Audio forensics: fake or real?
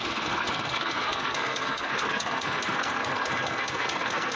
fake